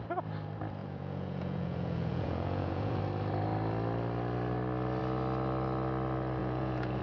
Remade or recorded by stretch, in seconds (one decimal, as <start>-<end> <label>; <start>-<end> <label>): 0.0-0.8 recorded; 0.8-3.0 remade; 3.0-6.4 recorded; 6.4-7.0 remade